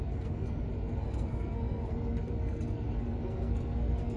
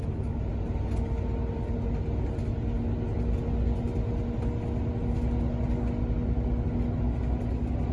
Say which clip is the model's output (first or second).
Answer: first